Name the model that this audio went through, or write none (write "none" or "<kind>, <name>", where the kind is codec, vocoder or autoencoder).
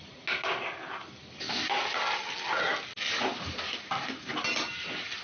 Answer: none